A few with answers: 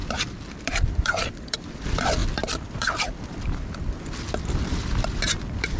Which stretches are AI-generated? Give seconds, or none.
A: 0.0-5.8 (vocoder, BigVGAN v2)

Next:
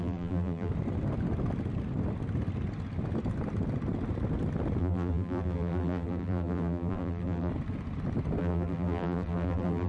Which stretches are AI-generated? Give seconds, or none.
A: 0.0-0.7 (vocoder, BigVGAN v2); 4.8-7.5; 8.4-9.9